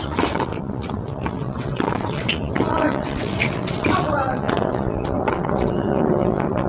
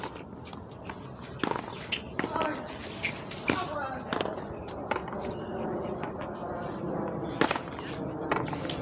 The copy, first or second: first